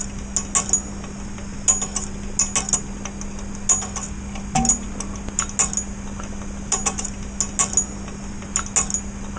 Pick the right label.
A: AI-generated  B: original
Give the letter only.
B